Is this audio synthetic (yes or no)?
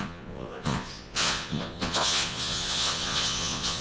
yes